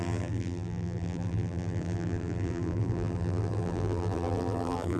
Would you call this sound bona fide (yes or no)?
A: no